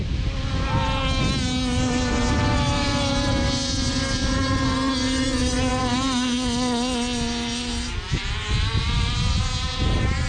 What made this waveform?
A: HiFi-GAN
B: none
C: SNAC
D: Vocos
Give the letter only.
B